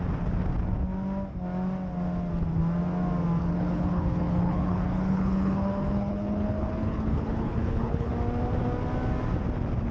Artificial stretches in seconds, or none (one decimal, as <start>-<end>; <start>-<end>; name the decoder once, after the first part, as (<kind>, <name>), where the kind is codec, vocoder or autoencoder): 3.4-8.1 (codec, HILCodec)